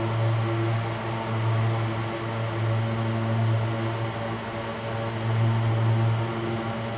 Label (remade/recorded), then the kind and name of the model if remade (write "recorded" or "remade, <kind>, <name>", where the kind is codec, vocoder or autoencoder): recorded